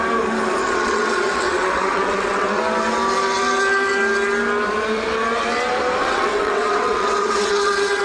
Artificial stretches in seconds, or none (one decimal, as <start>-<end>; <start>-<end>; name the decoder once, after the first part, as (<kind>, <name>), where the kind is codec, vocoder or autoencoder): 0.6-2.6 (vocoder, WaveNeXt); 6.0-8.0